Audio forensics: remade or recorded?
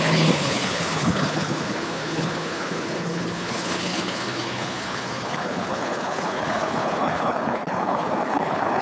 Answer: remade